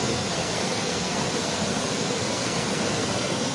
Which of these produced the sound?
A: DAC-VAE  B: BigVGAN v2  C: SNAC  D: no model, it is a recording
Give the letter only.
C